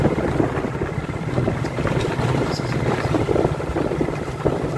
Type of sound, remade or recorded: remade